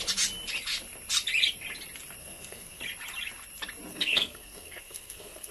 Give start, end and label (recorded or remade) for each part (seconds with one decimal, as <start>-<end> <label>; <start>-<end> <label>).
0.0-2.2 recorded; 2.2-2.8 remade; 2.8-3.9 recorded; 3.9-5.5 remade